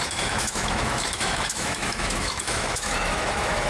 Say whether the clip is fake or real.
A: fake